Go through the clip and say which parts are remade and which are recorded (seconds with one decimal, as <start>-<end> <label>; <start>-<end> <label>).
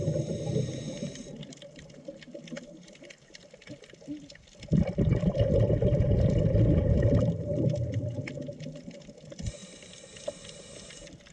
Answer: 0.0-9.6 recorded; 9.6-11.3 remade